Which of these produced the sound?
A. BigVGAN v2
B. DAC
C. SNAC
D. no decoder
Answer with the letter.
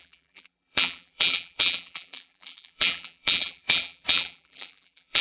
A